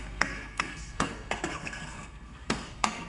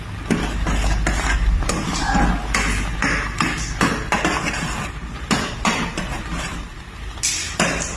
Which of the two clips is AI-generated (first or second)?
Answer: first